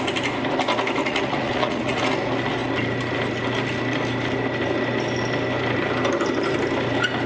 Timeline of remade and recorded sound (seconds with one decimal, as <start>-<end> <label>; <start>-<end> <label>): 0.0-1.0 recorded; 1.0-2.0 remade; 2.0-7.3 recorded